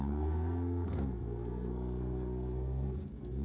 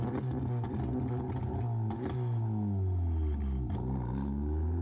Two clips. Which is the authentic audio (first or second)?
second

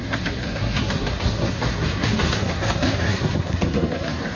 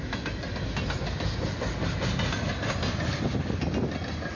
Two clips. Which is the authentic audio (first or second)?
second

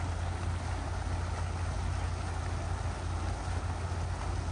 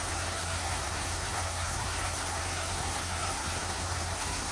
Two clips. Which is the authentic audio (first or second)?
first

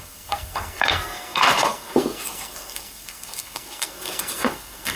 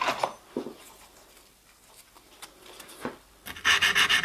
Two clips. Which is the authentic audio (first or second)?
second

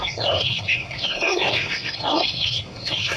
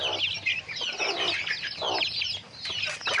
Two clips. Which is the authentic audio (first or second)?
second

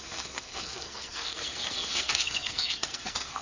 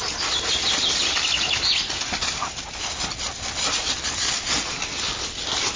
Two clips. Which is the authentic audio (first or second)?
second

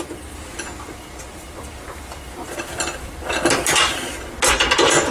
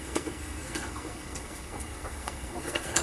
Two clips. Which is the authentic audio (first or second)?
first